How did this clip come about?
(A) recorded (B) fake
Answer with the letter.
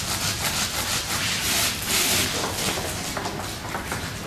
A